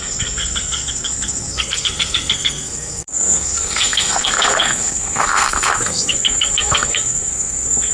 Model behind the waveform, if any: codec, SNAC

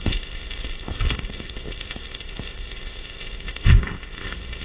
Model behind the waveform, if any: codec, ZipCodec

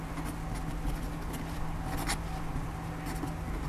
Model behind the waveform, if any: none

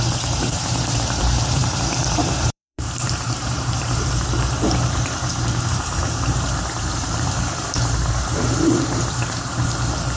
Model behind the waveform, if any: vocoder, BigVGAN v2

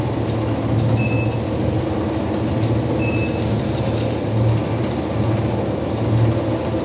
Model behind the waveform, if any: none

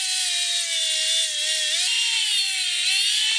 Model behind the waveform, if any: none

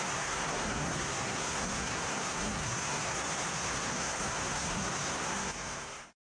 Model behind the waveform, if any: codec, SNAC